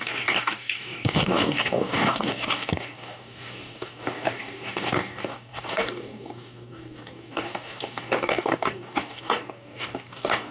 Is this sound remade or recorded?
remade